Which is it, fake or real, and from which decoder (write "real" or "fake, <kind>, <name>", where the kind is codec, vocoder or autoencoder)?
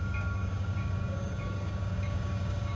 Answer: fake, codec, DAC